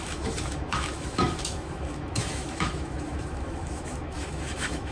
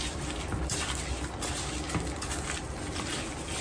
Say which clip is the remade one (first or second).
first